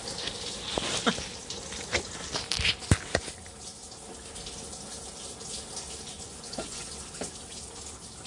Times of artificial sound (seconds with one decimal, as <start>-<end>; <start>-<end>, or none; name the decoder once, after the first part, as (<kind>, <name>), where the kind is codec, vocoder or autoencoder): 6.1-6.9 (vocoder, Vocos)